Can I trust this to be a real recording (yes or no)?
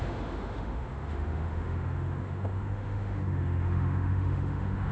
no